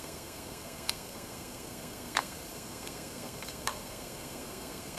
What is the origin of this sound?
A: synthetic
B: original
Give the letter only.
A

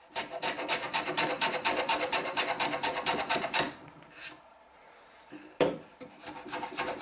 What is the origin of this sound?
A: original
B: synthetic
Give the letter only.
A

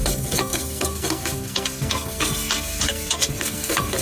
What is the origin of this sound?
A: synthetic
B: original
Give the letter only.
A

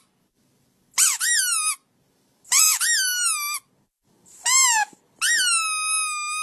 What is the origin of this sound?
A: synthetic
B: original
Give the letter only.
B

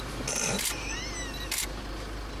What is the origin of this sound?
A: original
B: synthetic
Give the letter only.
A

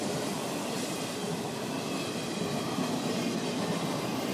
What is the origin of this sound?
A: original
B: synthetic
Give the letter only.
B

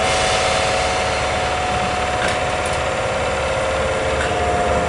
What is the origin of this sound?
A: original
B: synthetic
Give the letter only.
A